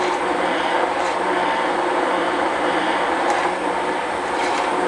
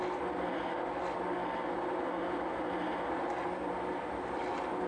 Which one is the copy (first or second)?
first